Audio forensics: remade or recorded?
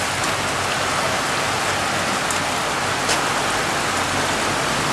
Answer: recorded